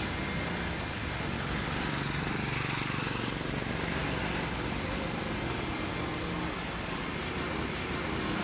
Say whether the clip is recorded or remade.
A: recorded